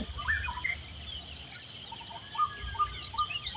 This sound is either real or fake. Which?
real